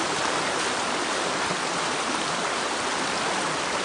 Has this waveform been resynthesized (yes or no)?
no